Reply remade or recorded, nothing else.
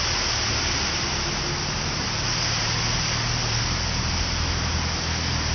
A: recorded